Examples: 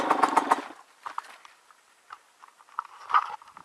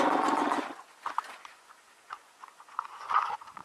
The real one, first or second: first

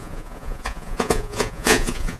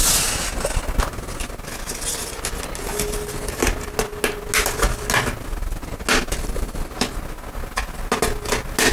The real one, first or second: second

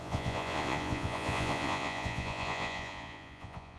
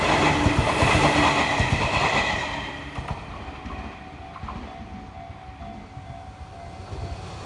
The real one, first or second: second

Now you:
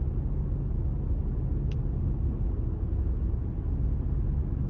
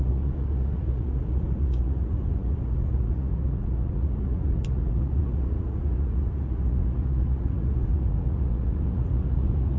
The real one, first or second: first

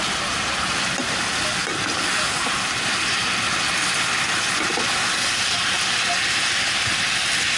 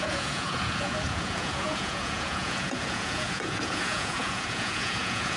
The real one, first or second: first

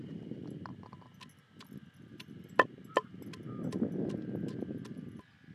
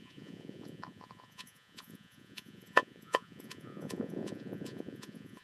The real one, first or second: first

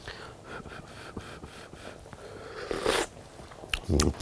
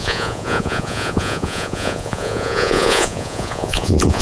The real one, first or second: first